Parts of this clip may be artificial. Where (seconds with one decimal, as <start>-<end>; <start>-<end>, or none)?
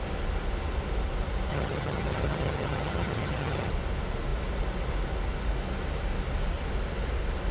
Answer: 1.5-3.7